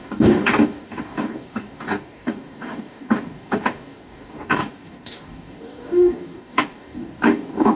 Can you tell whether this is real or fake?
fake